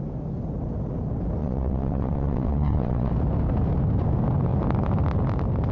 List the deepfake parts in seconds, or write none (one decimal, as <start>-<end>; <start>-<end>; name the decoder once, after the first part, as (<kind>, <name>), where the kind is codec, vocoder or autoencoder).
1.4-3.1 (vocoder, WaveNeXt)